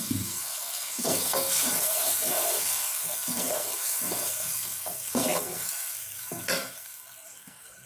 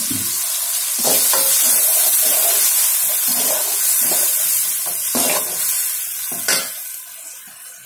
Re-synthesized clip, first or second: first